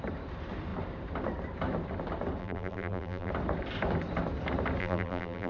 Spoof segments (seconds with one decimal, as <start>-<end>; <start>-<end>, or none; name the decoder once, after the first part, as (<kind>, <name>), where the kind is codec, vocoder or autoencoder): 2.4-3.3 (vocoder, BigVGAN v2); 4.8-5.5